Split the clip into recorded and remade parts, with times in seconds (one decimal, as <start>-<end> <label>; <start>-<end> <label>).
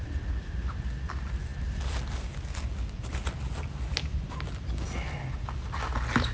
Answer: 0.0-6.3 recorded